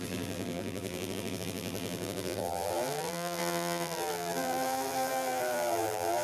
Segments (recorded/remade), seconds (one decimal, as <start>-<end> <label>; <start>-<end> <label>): 0.0-6.2 remade